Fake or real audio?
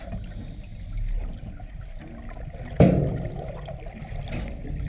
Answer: real